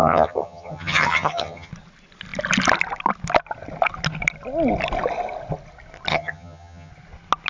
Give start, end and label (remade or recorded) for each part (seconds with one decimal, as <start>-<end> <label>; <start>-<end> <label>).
0.0-1.7 remade; 1.7-6.1 recorded; 6.1-6.9 remade; 6.9-7.5 recorded